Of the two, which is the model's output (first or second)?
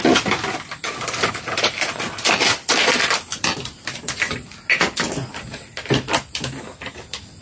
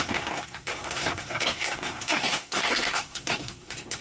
second